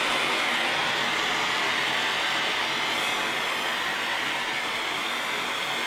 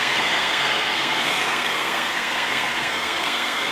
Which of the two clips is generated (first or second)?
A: second